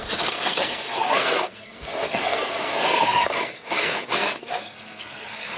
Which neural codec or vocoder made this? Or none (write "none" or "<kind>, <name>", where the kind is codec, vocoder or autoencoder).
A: codec, SNAC